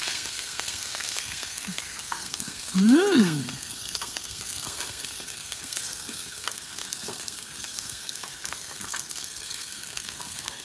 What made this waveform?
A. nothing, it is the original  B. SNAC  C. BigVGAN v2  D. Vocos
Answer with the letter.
B